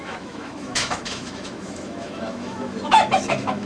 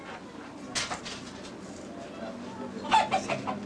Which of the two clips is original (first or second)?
second